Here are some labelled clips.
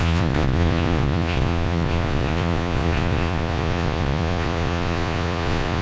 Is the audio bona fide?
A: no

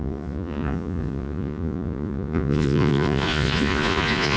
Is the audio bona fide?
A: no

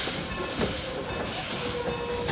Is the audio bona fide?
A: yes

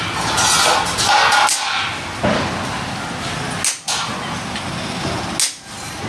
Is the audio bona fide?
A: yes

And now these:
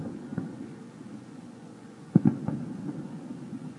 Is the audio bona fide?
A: no